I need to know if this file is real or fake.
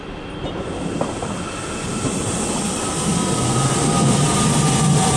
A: real